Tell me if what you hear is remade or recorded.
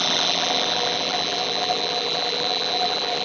remade